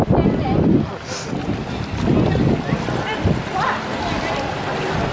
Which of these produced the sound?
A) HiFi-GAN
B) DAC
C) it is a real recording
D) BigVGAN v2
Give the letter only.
C